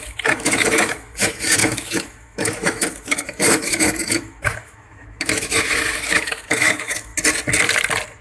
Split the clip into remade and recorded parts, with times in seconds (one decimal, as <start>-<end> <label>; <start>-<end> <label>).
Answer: 0.0-7.1 remade; 7.1-8.2 recorded